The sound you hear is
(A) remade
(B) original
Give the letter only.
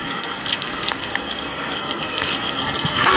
A